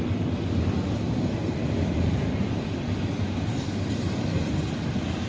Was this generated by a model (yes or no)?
no